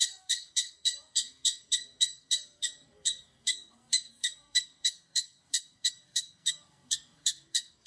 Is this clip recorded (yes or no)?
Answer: no